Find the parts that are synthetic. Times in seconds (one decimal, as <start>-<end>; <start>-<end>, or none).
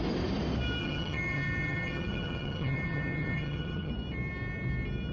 0.8-3.9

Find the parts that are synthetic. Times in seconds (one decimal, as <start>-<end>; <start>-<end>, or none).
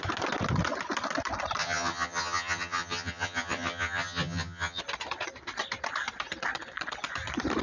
1.6-4.8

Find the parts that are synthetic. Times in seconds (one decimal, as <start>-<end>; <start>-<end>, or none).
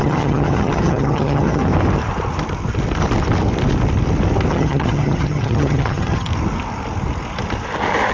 0.0-1.7; 4.5-6.3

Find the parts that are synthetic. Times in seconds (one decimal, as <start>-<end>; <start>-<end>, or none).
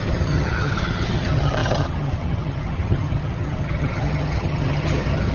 0.0-5.3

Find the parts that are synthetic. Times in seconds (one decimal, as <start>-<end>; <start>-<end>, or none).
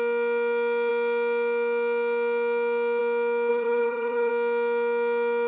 3.5-4.3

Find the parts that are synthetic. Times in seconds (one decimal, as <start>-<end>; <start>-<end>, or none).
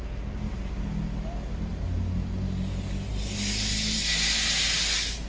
none